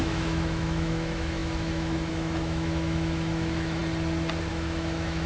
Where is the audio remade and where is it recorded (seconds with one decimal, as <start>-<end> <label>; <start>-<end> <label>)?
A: 0.0-3.8 remade; 3.8-4.5 recorded; 4.5-5.3 remade